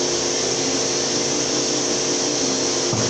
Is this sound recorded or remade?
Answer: recorded